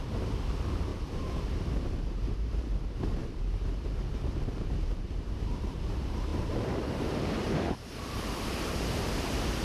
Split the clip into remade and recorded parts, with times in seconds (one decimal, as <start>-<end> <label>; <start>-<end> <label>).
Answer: 0.0-0.9 remade; 0.9-1.5 recorded; 1.5-9.6 remade